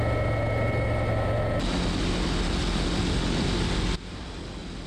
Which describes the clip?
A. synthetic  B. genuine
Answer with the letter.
B